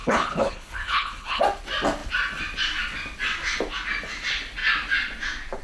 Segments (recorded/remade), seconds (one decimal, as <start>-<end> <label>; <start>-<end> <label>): 0.0-1.4 remade; 1.4-5.6 recorded